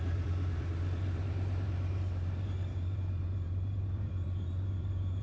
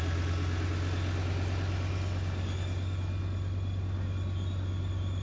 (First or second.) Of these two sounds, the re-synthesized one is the first